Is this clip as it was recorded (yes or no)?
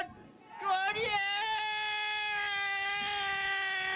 yes